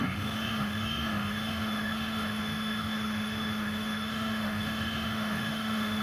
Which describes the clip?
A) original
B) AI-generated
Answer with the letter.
B